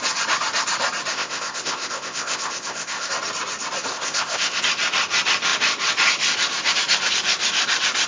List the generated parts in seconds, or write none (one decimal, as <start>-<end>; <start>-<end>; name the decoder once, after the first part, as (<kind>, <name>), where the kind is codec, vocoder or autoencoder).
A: 1.1-3.1 (codec, ZipCodec); 3.9-4.6